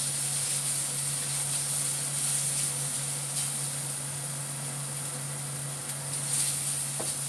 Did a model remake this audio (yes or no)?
no